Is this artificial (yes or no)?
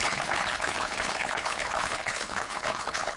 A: yes